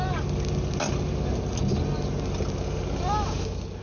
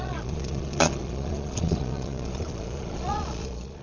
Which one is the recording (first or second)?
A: first